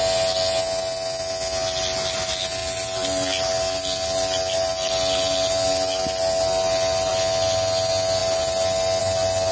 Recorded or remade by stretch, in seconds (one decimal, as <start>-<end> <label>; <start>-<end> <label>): 0.0-9.5 recorded